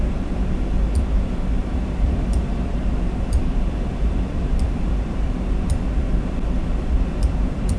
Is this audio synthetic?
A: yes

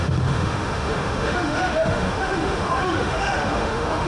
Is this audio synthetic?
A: yes